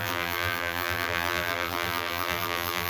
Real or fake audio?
fake